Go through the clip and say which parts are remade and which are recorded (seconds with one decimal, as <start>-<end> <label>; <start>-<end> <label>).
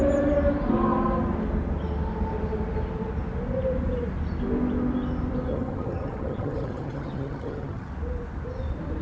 0.0-5.5 recorded; 5.5-7.9 remade; 7.9-9.0 recorded